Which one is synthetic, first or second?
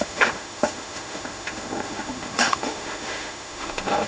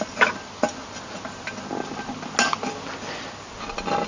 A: first